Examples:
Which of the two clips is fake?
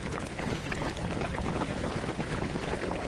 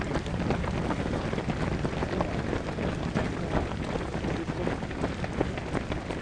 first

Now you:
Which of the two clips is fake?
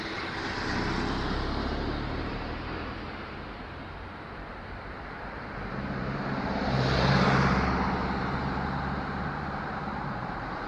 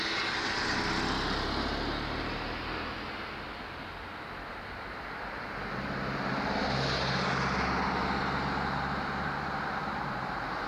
first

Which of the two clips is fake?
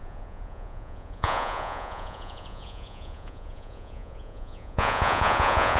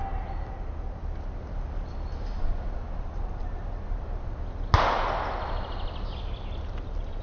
first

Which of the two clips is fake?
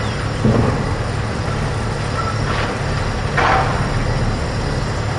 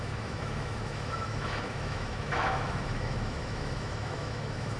second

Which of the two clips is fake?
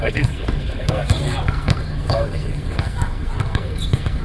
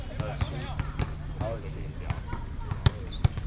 first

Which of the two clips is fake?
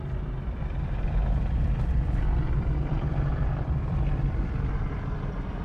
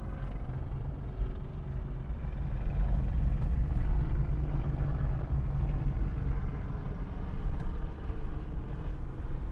first